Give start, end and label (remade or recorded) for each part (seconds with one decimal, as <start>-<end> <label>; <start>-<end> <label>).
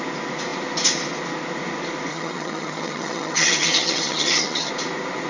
0.0-2.1 recorded; 2.1-4.7 remade; 4.7-5.3 recorded